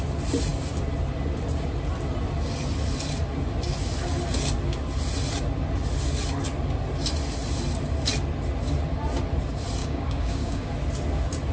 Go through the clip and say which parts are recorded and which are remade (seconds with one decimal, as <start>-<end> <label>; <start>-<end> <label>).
0.0-9.8 recorded; 9.8-10.7 remade; 10.7-11.5 recorded